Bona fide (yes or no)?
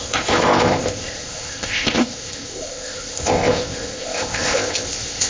no